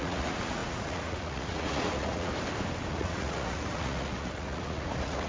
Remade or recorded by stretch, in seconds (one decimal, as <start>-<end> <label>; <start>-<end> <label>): 0.0-2.3 remade; 2.3-2.9 recorded; 2.9-5.3 remade